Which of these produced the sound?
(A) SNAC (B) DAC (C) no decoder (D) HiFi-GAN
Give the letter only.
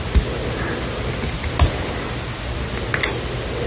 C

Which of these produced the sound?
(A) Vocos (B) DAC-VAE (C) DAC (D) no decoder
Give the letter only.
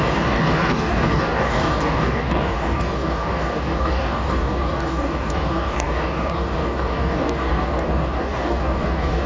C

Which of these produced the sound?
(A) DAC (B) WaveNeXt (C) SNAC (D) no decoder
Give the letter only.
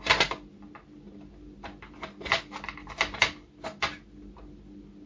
D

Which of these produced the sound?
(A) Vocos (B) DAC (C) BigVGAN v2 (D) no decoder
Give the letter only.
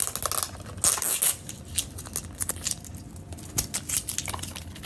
D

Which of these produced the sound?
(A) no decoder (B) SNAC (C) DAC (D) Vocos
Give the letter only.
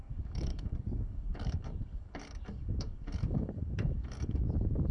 C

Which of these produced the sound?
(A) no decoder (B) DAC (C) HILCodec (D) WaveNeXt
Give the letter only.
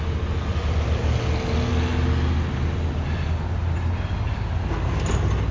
A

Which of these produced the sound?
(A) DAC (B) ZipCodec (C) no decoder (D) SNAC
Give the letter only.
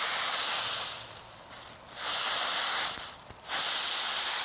C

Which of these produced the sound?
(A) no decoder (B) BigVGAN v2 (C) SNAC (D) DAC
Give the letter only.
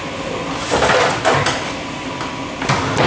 A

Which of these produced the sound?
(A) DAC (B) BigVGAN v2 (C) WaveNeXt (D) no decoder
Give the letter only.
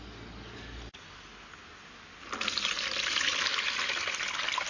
D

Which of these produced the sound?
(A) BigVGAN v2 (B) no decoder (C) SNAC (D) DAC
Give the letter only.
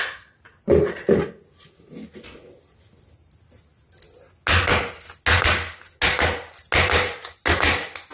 B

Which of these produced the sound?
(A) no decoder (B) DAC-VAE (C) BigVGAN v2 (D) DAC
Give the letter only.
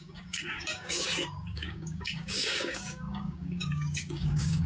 D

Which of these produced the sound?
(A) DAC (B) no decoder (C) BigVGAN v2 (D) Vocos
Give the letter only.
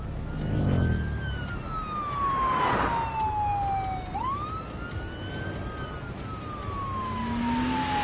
B